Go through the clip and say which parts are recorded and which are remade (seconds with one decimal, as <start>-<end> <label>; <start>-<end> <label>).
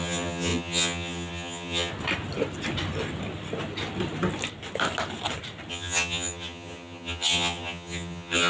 0.0-1.9 remade; 1.9-5.7 recorded; 5.7-8.5 remade